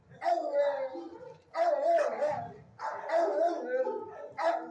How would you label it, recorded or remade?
recorded